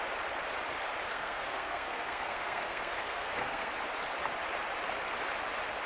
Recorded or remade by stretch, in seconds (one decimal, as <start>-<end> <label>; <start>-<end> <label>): 0.0-1.1 recorded; 1.1-3.7 remade; 3.7-5.9 recorded